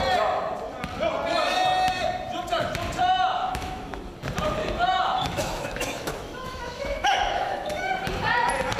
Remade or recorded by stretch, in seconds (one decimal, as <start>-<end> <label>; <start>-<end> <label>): 0.0-3.4 recorded; 3.4-4.1 remade; 4.1-4.6 recorded; 4.6-7.9 remade; 7.9-8.8 recorded